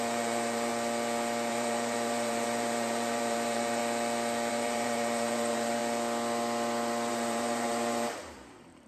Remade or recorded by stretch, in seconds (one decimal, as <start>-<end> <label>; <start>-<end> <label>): 0.0-0.7 remade; 0.7-1.5 recorded; 1.5-3.8 remade; 3.8-4.5 recorded; 4.5-5.8 remade; 5.8-7.1 recorded; 7.1-8.9 remade